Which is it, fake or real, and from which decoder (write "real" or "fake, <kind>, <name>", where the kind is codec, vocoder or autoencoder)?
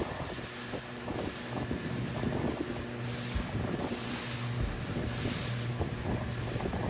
real